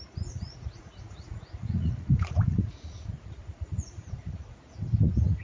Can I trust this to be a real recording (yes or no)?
no